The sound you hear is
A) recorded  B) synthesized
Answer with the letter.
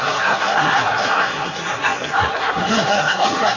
B